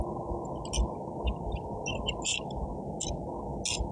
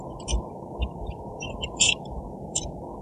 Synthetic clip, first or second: second